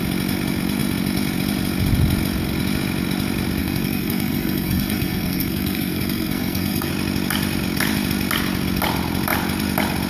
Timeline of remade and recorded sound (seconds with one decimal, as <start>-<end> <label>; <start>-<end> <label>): 0.0-3.6 recorded; 3.6-6.9 remade; 6.9-10.1 recorded

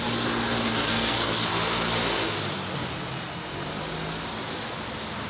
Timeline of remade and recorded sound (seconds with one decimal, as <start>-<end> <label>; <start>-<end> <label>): 0.0-0.7 recorded; 0.7-1.6 remade; 1.6-5.3 recorded

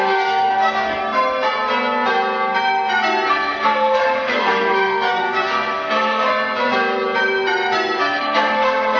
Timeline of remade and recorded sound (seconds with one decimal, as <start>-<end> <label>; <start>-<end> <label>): 0.0-1.0 remade; 1.0-3.3 recorded; 3.3-6.3 remade; 6.3-8.0 recorded; 8.0-9.0 remade

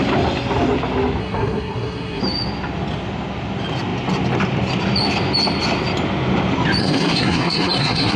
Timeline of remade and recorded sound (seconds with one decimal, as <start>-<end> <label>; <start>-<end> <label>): 0.0-1.2 recorded; 1.2-2.2 remade; 2.2-6.8 recorded; 6.8-8.2 remade

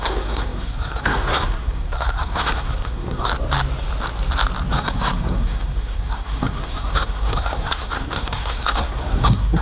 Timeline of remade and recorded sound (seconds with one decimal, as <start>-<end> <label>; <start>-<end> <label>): 0.0-3.3 remade; 3.3-4.7 recorded; 4.7-9.6 remade

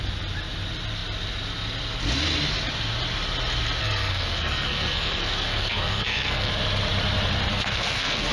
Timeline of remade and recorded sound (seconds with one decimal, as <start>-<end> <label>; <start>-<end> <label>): 0.0-3.8 recorded; 3.8-6.5 remade; 6.5-7.5 recorded; 7.5-8.3 remade